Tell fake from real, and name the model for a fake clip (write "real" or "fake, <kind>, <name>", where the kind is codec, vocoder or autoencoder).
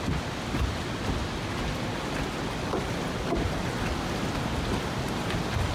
real